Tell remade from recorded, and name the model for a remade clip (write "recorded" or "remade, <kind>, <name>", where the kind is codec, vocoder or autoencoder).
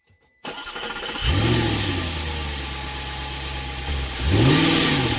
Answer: recorded